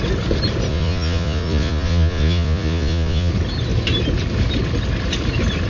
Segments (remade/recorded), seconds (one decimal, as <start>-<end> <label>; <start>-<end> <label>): 0.0-0.7 recorded; 0.7-3.3 remade; 3.3-5.7 recorded